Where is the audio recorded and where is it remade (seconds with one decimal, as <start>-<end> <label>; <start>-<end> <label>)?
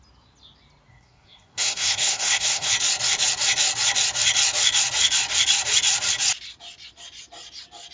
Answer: 0.0-0.9 recorded; 0.9-2.7 remade; 2.7-7.9 recorded